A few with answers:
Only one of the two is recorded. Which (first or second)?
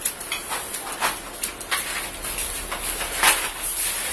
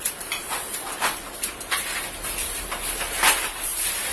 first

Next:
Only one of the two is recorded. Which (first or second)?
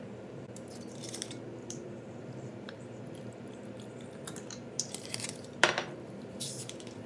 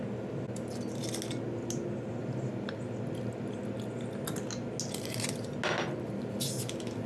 second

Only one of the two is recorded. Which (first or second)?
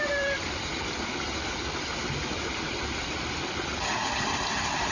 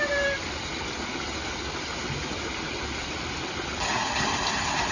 second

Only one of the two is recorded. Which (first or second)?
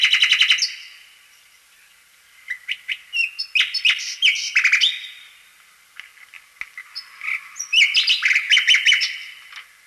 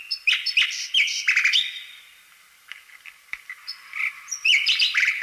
first